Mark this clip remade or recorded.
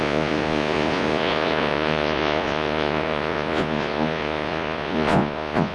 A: remade